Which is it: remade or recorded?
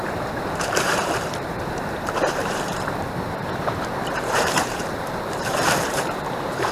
remade